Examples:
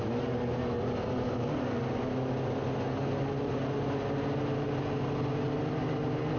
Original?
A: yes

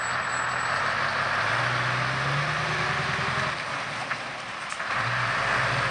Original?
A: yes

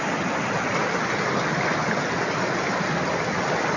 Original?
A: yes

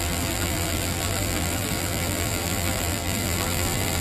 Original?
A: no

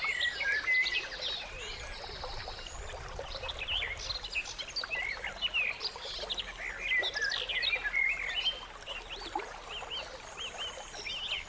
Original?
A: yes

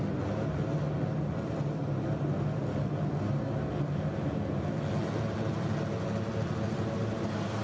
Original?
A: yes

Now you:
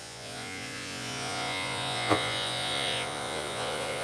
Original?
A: no